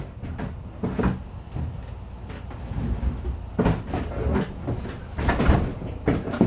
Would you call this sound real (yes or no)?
yes